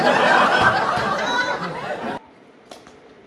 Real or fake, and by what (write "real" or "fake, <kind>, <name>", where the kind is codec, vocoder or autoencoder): real